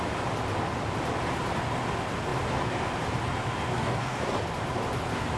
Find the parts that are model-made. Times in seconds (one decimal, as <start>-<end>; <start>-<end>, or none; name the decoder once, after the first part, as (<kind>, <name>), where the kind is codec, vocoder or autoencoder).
3.7-4.3 (codec, DAC)